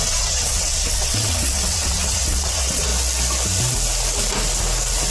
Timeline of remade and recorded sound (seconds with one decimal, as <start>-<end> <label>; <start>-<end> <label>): 0.0-2.9 remade; 2.9-5.1 recorded